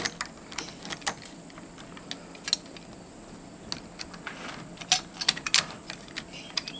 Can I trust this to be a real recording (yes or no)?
yes